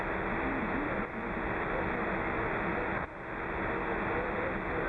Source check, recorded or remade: remade